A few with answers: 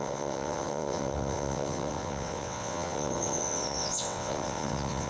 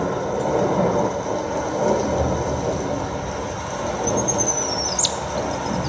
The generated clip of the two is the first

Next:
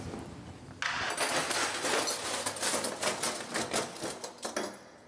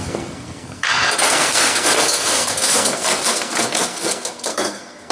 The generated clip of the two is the second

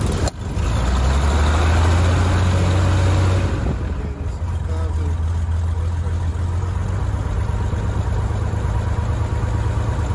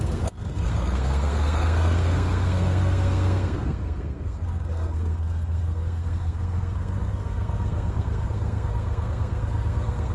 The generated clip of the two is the second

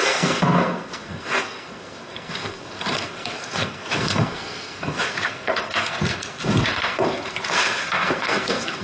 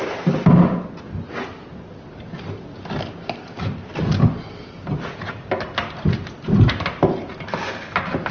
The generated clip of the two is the first